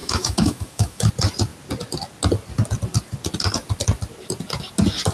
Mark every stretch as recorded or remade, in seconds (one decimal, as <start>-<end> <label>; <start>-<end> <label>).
0.0-1.1 remade; 1.1-5.1 recorded